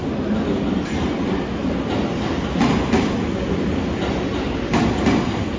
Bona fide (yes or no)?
yes